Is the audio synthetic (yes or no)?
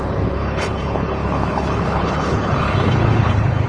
yes